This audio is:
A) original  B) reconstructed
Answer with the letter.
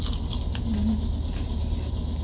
A